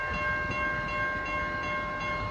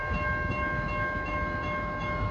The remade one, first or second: second